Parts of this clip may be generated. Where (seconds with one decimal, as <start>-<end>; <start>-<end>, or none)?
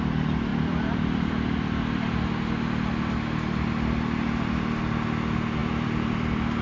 0.5-2.5; 5.6-6.6